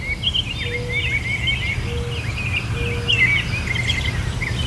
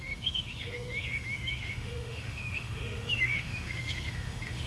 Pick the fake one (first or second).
second